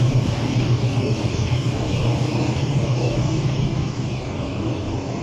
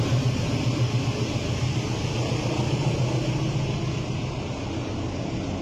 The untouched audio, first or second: second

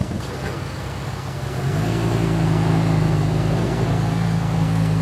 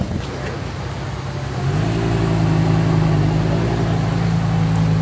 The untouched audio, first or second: second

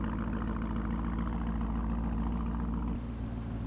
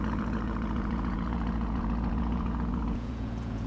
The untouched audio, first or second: first